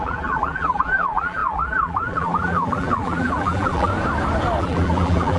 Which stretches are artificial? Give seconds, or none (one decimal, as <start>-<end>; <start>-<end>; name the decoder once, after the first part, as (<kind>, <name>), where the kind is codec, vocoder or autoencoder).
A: 0.0-3.9 (vocoder, BigVGAN v2); 4.6-5.4